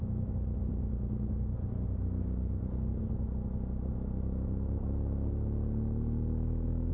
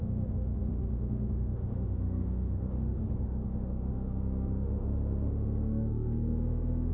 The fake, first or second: second